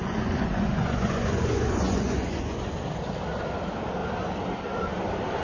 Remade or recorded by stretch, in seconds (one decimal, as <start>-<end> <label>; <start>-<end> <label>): 0.0-2.7 remade; 2.7-5.4 recorded

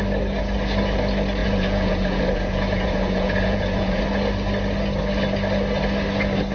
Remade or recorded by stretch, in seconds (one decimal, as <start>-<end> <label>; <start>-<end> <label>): 0.0-1.4 recorded; 1.4-4.0 remade; 4.0-6.5 recorded

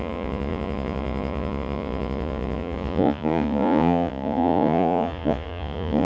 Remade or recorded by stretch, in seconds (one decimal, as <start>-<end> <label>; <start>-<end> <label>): 0.0-6.0 remade

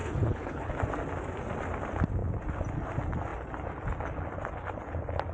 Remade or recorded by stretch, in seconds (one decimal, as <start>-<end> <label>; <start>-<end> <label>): 0.0-0.7 remade; 0.7-5.3 recorded

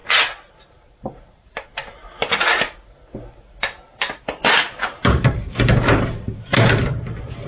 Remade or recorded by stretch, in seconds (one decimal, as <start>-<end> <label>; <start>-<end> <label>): 0.0-0.7 recorded; 0.7-2.2 remade; 2.2-4.8 recorded; 4.8-7.5 remade

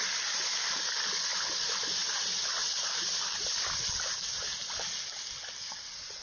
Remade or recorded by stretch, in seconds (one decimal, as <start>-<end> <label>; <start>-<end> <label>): 0.0-6.2 recorded

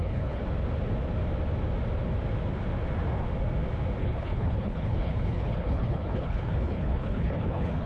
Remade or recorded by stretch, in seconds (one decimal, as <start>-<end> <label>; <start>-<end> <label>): 0.0-0.4 remade; 0.4-4.0 recorded; 4.0-7.9 remade